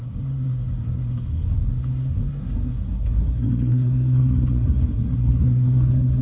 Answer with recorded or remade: remade